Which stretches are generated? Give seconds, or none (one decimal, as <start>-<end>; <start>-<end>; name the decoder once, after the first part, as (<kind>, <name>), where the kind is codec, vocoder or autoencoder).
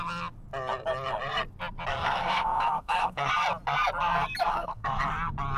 1.9-3.3 (codec, SNAC); 4.4-5.0